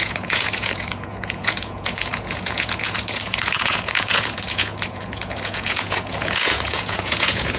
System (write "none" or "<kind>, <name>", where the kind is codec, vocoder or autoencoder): vocoder, Vocos